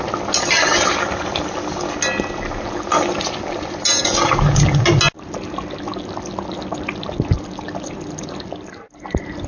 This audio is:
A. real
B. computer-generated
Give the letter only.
A